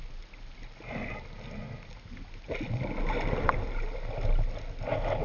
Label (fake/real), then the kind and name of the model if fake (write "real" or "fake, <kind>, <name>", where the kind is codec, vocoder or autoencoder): real